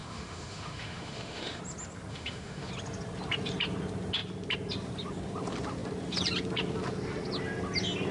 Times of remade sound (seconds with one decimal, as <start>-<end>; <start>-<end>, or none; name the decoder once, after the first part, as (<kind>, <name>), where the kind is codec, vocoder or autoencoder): 0.0-1.6 (autoencoder, DAC-VAE); 2.1-2.7